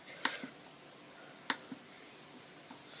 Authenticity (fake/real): real